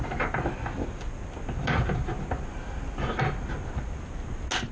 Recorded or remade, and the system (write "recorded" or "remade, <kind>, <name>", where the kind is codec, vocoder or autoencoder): recorded